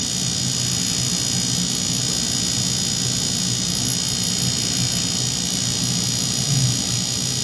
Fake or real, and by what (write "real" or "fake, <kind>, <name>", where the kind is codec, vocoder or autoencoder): real